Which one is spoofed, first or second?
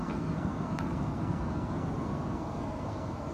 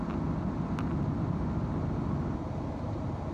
first